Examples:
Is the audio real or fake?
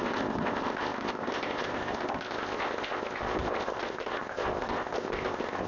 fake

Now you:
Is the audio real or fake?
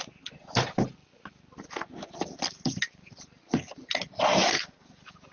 real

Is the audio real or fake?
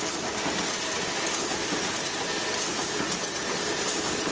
real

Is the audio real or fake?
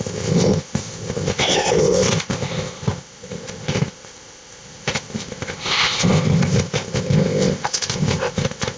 fake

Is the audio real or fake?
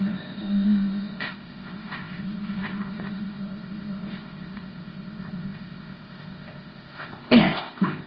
fake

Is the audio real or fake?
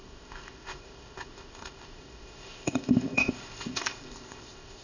fake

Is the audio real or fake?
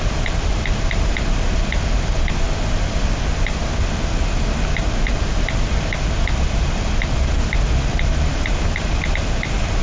real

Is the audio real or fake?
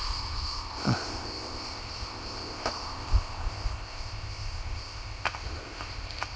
fake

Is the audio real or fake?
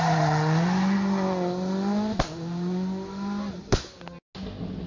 real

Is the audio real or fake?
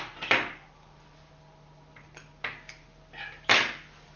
real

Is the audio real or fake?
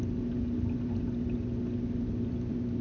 real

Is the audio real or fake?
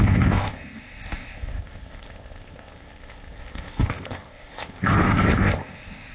fake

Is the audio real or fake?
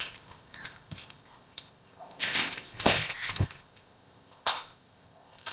fake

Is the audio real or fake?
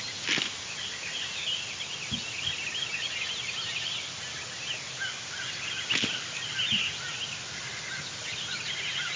real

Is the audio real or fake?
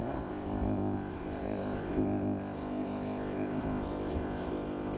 fake